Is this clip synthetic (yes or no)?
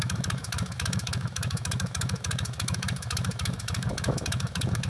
yes